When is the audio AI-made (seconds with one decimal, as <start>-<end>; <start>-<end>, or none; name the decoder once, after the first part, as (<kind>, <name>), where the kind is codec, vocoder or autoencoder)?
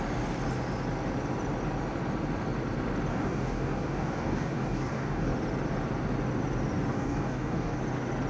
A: 3.1-5.3 (codec, DAC); 6.9-7.8